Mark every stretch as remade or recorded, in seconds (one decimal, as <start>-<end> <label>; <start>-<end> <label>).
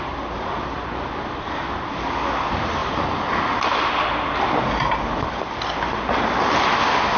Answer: 0.0-7.2 recorded